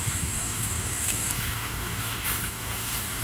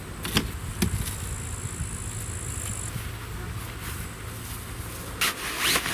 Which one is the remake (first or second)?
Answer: first